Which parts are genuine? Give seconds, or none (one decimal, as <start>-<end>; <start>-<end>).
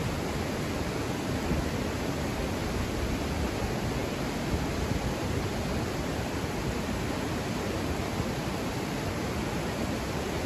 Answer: 0.0-10.5